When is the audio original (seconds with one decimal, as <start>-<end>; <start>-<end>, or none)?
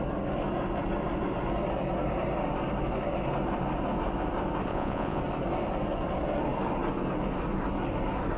0.0-4.7; 5.2-8.4